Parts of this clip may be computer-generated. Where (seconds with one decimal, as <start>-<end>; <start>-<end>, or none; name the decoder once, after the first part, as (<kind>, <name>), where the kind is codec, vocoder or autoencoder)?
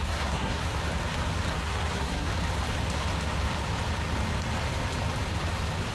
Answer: 0.0-0.6 (codec, SNAC); 1.6-2.3